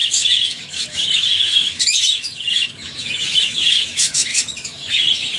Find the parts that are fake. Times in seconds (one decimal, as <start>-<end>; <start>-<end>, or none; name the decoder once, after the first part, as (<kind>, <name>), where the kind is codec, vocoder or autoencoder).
0.0-5.4 (autoencoder, DAC-VAE)